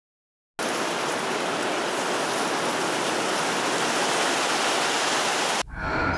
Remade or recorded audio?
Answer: recorded